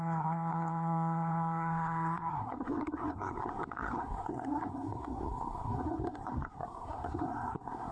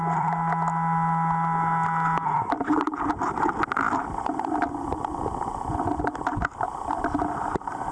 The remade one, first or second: first